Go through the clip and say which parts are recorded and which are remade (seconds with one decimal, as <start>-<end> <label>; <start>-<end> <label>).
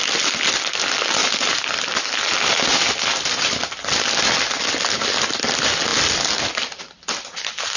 0.0-7.8 recorded